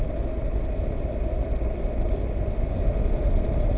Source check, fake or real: real